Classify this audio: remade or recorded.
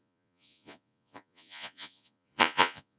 remade